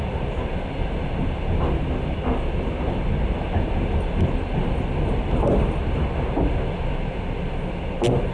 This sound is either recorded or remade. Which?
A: recorded